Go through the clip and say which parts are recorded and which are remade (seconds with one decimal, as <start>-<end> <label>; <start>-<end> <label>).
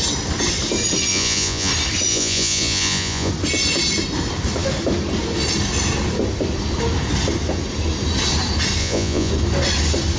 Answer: 0.0-1.1 recorded; 1.1-1.7 remade; 1.7-2.1 recorded; 2.1-3.3 remade; 3.3-8.8 recorded; 8.8-9.3 remade; 9.3-10.2 recorded